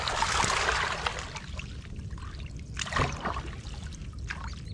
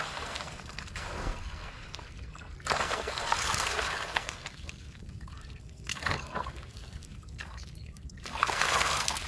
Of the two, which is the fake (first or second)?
second